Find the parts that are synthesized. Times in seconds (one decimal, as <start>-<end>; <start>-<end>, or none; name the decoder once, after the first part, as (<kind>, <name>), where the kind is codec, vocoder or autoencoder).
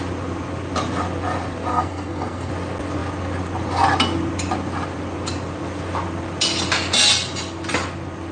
1.7-2.5 (codec, SNAC)